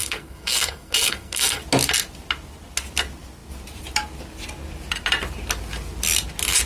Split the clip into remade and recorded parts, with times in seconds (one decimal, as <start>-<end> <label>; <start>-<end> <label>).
0.0-1.6 remade; 1.6-6.7 recorded